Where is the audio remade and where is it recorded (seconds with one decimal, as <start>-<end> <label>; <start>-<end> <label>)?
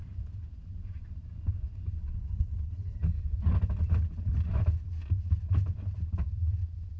0.0-2.0 recorded; 2.0-3.0 remade; 3.0-7.0 recorded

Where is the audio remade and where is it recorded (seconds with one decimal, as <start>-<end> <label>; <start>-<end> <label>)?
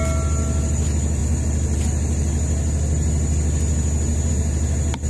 0.0-5.1 recorded